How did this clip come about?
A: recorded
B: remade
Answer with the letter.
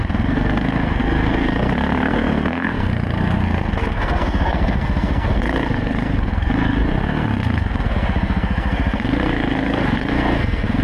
B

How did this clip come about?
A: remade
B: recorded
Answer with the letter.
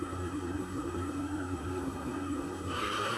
A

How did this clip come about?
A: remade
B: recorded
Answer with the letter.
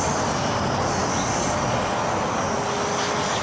B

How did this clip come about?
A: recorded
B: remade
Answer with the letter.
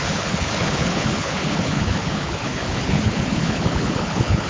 B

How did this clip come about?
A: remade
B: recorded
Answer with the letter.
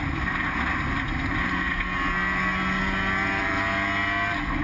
B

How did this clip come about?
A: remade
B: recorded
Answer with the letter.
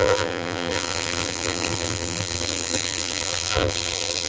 A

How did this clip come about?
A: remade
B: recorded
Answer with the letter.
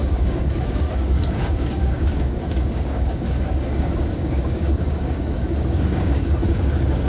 A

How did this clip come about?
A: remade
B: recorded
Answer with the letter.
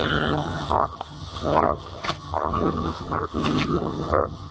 A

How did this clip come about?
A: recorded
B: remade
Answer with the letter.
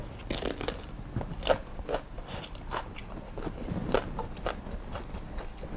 A